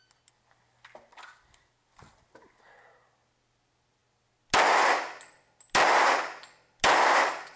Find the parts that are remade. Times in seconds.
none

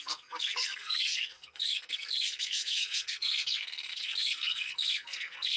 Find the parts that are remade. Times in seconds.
0.0-5.6